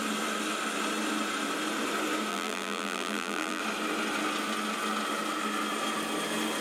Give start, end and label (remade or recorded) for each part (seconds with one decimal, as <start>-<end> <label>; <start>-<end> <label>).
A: 0.0-2.3 recorded; 2.3-3.6 remade; 3.6-6.6 recorded